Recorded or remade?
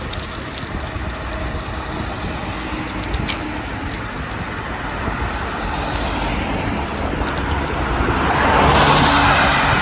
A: recorded